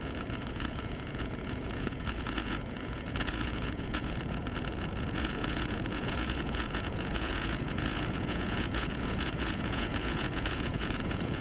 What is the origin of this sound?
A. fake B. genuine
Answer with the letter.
A